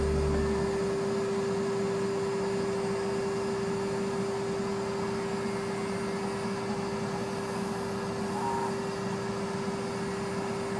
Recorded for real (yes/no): yes